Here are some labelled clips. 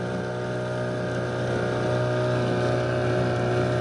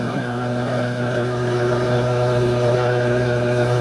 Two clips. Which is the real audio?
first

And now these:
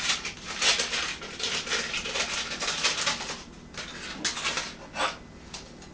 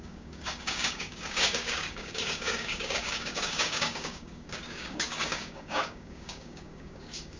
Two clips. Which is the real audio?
first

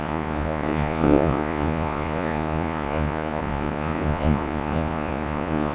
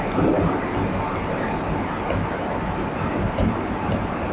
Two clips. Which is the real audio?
second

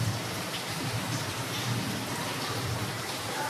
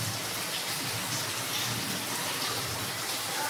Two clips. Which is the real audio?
second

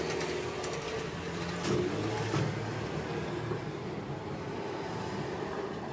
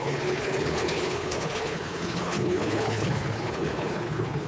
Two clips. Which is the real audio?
first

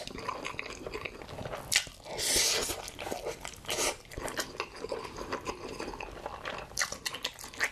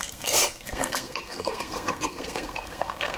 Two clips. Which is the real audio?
first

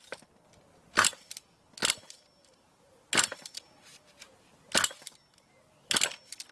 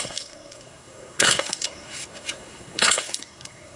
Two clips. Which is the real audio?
first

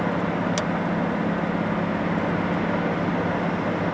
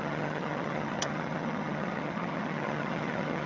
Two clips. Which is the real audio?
first